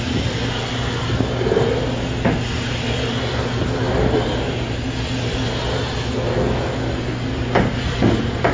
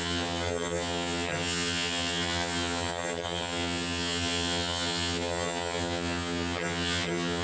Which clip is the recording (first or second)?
first